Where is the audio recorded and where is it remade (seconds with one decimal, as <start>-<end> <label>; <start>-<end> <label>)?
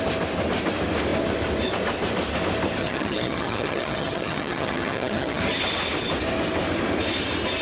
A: 0.0-2.8 recorded; 2.8-5.4 remade; 5.4-7.6 recorded